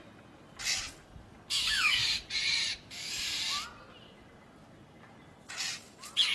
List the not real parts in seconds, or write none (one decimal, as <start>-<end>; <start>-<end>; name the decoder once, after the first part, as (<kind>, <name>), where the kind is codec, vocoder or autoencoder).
2.0-3.4 (vocoder, BigVGAN v2)